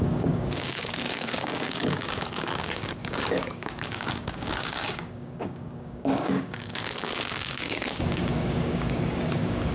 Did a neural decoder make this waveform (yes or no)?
yes